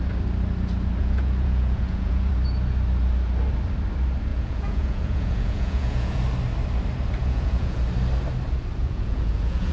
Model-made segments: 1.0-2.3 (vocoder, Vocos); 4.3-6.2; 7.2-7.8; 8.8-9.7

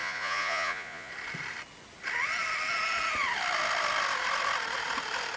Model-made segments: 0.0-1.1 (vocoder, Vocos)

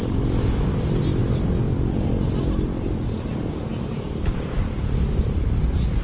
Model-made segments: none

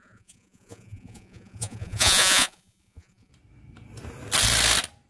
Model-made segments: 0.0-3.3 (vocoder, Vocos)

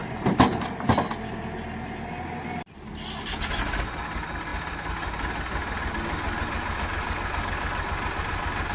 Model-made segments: none

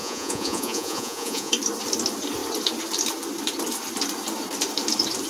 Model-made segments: 0.0-1.5 (vocoder, Vocos)